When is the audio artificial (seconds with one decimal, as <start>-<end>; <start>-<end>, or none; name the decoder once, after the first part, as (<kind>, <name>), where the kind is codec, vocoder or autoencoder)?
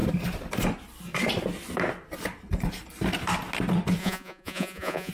4.0-5.1 (vocoder, Vocos)